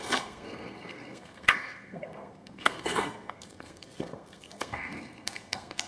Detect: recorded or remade remade